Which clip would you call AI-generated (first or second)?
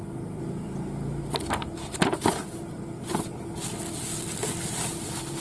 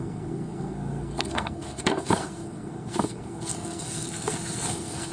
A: second